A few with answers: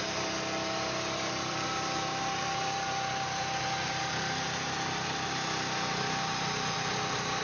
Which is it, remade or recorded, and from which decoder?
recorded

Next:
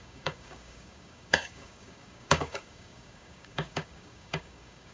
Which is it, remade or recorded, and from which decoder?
remade, codec, DAC